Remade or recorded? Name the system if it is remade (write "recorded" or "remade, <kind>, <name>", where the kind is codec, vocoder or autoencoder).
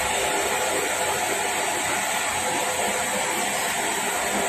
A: recorded